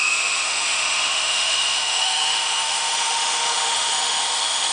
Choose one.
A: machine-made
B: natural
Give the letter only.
A